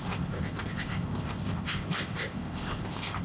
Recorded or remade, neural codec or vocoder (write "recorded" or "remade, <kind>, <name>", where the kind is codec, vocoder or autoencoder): remade, codec, ZipCodec